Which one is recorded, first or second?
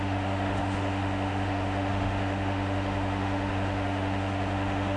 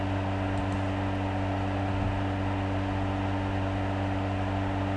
second